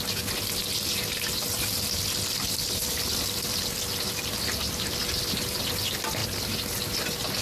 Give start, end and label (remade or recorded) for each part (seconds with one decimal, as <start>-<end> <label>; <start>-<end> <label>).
0.0-7.4 recorded